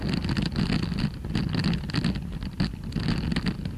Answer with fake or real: real